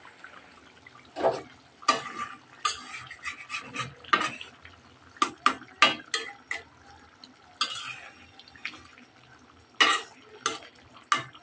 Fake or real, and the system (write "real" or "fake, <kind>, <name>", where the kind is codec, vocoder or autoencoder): real